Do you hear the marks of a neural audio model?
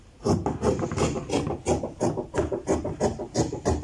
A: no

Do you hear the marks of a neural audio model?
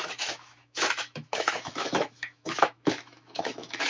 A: yes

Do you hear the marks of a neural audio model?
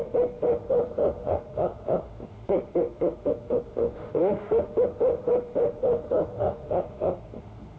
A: yes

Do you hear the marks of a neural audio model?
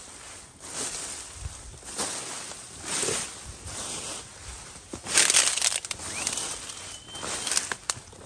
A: no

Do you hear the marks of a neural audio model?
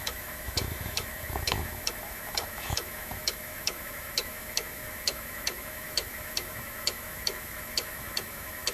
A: yes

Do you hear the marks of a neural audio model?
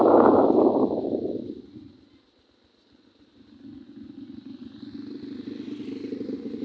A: no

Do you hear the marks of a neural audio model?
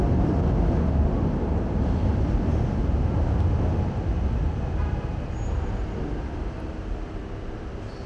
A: no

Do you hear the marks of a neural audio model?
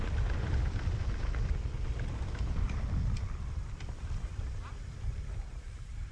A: no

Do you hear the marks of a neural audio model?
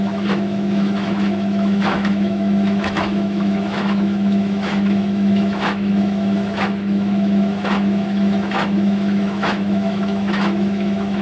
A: yes